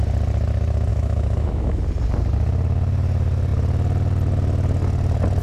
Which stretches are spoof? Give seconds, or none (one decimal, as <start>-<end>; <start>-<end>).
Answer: 0.9-1.8